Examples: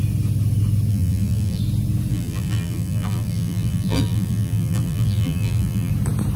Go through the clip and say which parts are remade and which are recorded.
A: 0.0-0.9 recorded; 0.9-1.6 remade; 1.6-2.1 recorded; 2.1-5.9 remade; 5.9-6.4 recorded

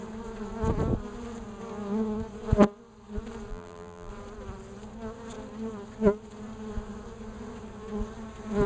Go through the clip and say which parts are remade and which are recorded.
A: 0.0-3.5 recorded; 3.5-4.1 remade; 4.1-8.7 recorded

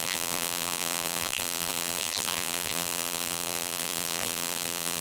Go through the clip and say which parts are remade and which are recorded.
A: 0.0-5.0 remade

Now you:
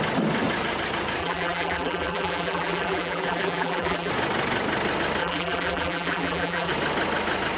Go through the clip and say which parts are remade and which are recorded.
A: 0.0-1.2 recorded; 1.2-4.1 remade; 4.1-5.2 recorded; 5.2-6.7 remade; 6.7-7.6 recorded